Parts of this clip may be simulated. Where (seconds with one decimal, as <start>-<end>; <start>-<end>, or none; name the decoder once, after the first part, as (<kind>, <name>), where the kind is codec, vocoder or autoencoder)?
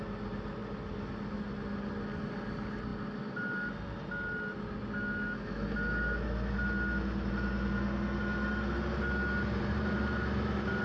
9.6-10.8 (vocoder, BigVGAN v2)